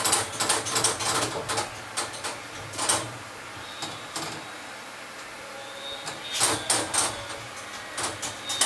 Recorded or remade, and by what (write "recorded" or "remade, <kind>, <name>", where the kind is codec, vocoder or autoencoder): recorded